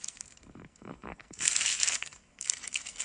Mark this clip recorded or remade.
remade